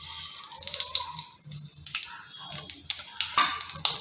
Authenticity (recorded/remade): recorded